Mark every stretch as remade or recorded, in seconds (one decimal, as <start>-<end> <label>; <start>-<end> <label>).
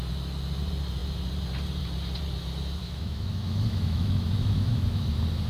0.0-2.8 recorded; 2.8-5.1 remade; 5.1-5.5 recorded